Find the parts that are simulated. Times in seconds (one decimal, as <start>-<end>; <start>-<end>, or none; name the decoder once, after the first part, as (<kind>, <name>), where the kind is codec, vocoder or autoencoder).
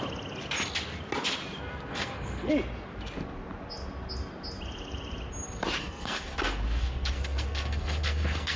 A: 1.9-2.5 (codec, SNAC); 5.8-8.6